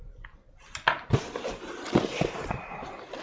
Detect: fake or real real